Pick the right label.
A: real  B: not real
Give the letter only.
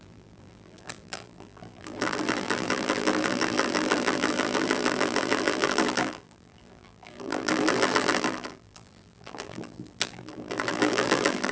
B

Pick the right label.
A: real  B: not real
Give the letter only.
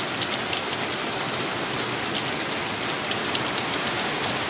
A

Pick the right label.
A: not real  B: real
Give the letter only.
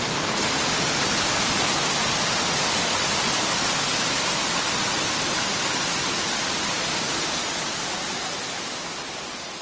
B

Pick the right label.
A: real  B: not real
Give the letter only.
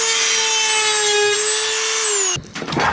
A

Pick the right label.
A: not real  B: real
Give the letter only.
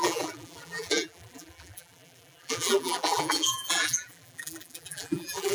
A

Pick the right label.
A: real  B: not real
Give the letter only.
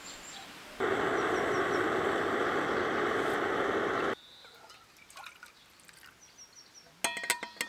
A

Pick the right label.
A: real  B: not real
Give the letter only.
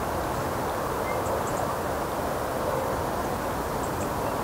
A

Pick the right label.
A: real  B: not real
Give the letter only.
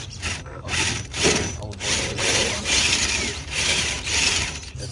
B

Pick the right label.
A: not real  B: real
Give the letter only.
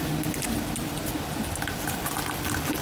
B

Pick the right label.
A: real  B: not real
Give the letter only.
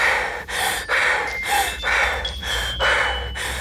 A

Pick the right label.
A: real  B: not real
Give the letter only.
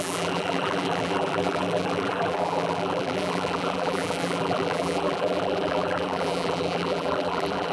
B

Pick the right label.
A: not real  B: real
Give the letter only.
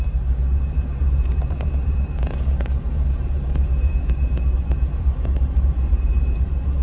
A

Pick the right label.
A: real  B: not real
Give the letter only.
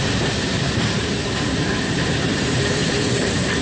B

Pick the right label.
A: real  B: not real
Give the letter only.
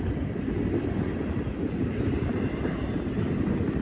B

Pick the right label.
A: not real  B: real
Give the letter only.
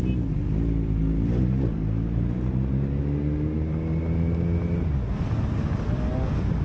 B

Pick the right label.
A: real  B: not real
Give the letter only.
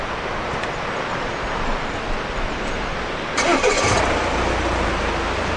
A